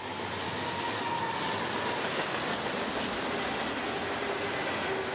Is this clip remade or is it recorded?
recorded